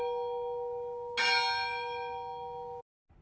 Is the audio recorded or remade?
recorded